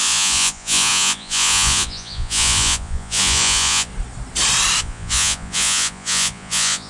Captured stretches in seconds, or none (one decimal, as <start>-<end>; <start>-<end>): 3.9-4.8